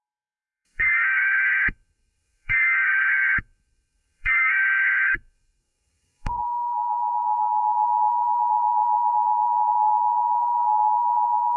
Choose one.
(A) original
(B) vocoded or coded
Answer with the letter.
B